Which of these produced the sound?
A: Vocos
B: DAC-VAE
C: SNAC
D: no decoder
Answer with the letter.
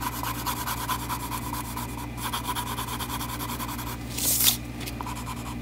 D